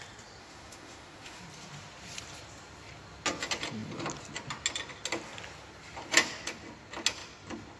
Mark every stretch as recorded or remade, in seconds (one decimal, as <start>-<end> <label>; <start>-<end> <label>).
0.0-0.4 recorded; 0.4-1.4 remade; 1.4-7.8 recorded